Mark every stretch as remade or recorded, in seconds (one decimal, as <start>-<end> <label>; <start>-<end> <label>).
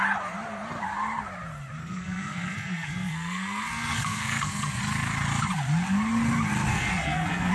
0.0-1.8 recorded; 1.8-4.8 remade; 4.8-6.7 recorded; 6.7-7.5 remade